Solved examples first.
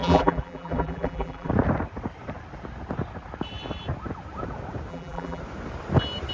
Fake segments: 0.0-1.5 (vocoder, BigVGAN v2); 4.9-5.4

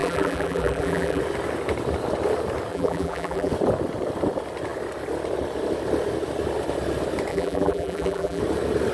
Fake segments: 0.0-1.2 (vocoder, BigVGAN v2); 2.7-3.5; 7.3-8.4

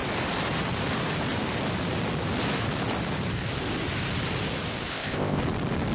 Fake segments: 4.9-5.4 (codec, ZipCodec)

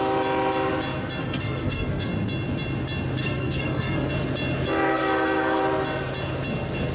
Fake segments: 1.2-2.1 (codec, SNAC); 3.2-4.1; 4.9-5.6